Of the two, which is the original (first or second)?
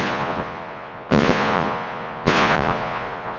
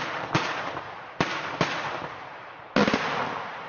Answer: second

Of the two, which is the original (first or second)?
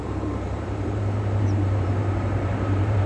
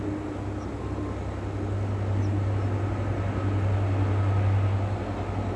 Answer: second